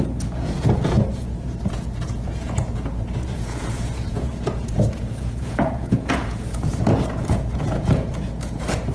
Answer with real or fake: fake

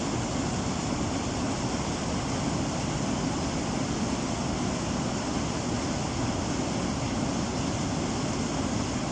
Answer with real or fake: real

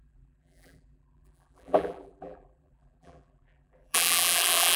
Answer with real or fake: fake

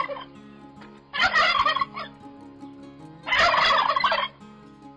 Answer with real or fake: real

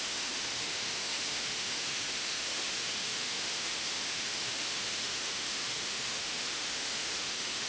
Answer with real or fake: fake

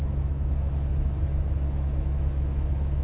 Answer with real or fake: fake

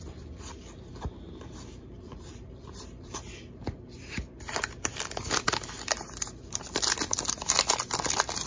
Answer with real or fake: fake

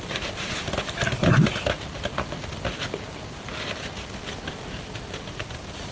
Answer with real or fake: real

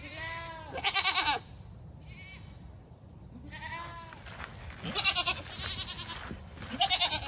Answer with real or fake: real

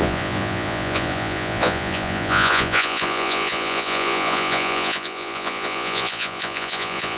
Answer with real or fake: fake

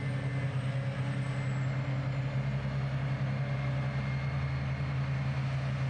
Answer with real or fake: real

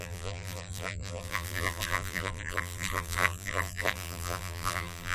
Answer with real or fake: fake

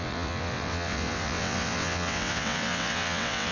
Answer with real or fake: fake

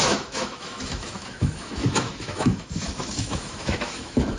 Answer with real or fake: fake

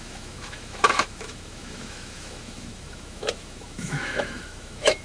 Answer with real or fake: fake